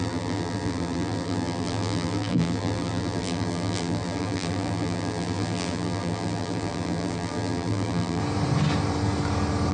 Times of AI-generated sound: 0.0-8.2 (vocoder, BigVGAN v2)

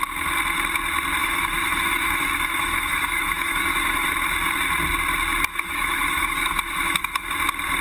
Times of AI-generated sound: 1.2-4.1 (autoencoder, DAC-VAE); 5.5-7.3

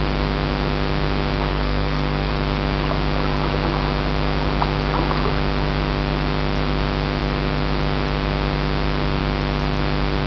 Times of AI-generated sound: 1.5-2.3 (codec, SNAC)

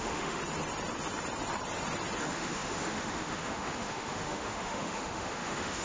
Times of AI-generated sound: 0.0-0.4 (autoencoder, DAC-VAE); 2.2-5.8

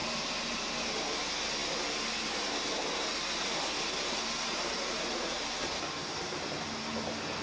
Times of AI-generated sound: none

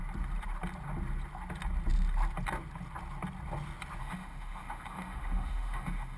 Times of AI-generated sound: 4.0-6.2 (autoencoder, DAC-VAE)